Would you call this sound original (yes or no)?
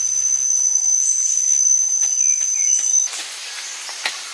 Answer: yes